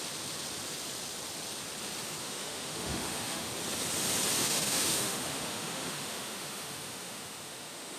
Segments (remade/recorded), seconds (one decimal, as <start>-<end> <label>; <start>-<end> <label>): 0.0-2.2 recorded; 2.2-3.5 remade; 3.5-4.4 recorded; 4.4-8.0 remade